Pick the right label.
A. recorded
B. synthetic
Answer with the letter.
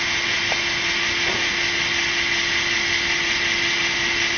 A